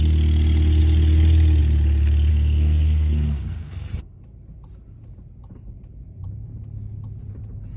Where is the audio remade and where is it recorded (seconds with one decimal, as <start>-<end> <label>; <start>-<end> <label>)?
0.0-2.3 recorded; 2.3-4.2 remade; 4.2-7.8 recorded